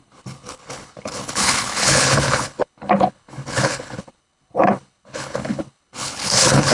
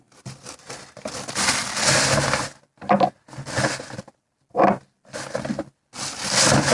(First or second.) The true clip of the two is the second